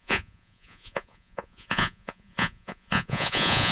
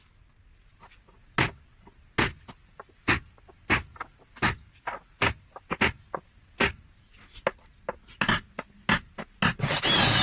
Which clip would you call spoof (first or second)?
first